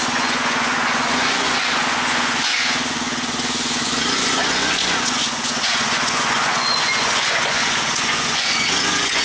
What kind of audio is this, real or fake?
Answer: fake